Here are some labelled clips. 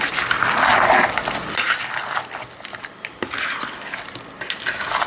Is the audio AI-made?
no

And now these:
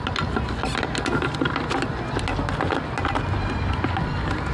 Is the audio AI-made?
no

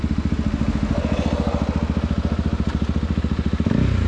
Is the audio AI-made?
no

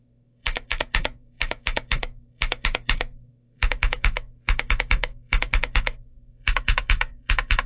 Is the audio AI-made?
yes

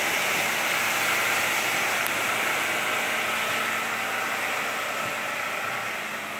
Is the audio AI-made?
no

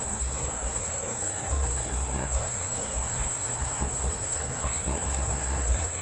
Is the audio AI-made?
yes